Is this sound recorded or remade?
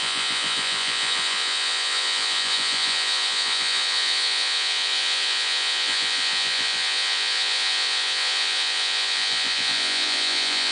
remade